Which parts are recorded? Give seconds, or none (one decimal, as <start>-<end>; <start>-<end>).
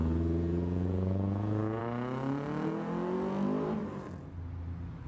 1.8-5.1